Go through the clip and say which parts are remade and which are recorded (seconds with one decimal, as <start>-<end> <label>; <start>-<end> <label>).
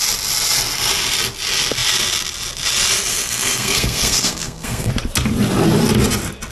0.0-3.1 recorded; 3.1-4.9 remade; 4.9-6.5 recorded